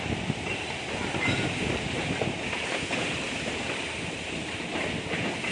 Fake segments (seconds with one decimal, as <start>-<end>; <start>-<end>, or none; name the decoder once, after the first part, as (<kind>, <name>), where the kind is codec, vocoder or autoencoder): 1.0-3.7 (vocoder, BigVGAN v2); 4.7-5.5